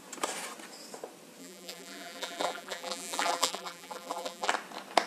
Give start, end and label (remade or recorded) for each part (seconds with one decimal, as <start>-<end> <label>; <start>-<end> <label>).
0.0-1.4 recorded; 1.4-4.5 remade; 4.5-5.1 recorded